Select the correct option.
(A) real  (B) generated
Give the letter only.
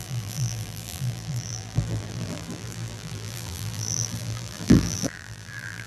B